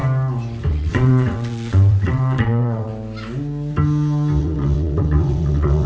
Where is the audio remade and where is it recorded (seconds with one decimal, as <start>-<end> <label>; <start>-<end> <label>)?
0.0-0.7 recorded; 0.7-2.9 remade; 2.9-4.4 recorded; 4.4-5.9 remade